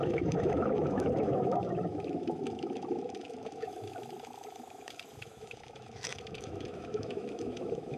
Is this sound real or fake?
fake